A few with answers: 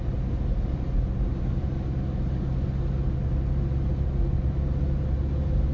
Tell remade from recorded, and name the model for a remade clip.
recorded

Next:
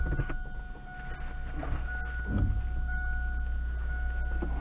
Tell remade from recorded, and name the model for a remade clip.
recorded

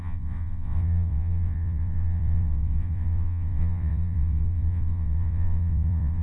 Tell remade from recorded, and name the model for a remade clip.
remade, vocoder, WaveNeXt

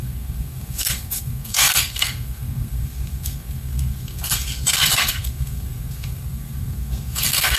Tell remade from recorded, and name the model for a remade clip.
remade, codec, SNAC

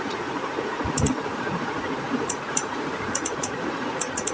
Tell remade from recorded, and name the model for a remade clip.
remade, vocoder, Vocos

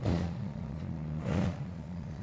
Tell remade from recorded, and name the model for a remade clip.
remade, vocoder, Vocos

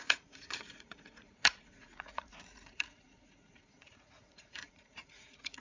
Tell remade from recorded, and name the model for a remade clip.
remade, vocoder, Vocos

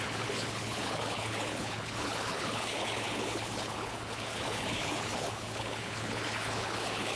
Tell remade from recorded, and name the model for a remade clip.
remade, codec, HILCodec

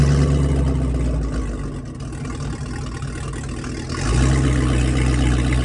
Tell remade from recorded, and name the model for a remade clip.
recorded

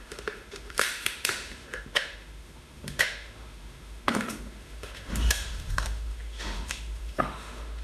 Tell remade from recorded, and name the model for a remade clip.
remade, autoencoder, DAC-VAE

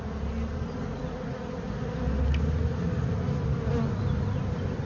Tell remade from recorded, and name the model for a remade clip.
recorded